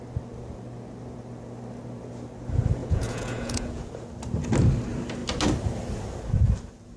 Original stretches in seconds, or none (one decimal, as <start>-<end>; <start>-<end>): 0.0-2.8; 3.9-7.0